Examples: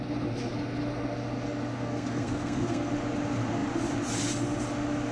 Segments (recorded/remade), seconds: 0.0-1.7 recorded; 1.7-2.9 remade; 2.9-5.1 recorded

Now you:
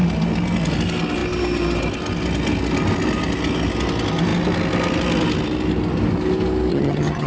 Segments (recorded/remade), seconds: 0.0-6.7 recorded; 6.7-7.3 remade

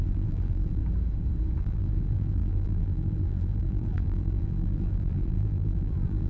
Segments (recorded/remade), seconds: 0.0-0.8 remade; 0.8-1.6 recorded; 1.6-6.3 remade

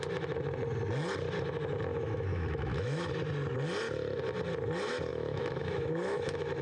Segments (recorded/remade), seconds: 0.0-1.9 recorded; 1.9-3.1 remade; 3.1-5.1 recorded; 5.1-6.6 remade